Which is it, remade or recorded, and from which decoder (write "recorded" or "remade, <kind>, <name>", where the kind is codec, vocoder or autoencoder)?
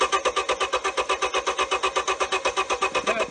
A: recorded